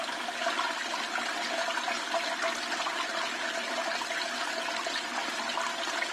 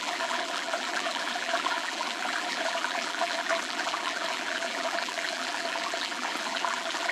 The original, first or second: first